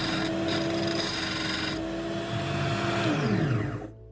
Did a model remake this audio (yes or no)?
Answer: no